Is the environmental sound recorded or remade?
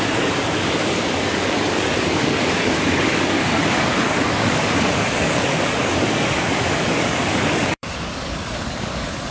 remade